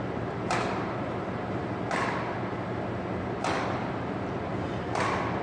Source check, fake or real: real